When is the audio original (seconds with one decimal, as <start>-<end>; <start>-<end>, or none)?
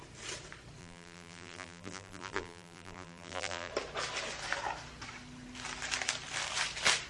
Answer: 0.0-0.8; 3.7-7.1